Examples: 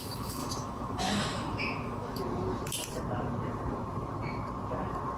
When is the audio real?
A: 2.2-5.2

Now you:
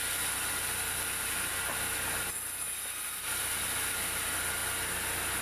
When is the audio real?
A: 0.0-5.4